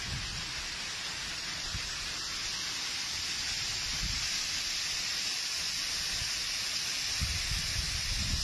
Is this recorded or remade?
recorded